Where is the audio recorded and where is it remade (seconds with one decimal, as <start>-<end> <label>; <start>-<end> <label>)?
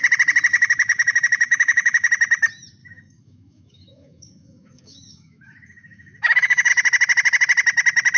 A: 0.0-0.5 recorded; 0.5-2.1 remade; 2.1-2.8 recorded; 2.8-6.7 remade; 6.7-8.2 recorded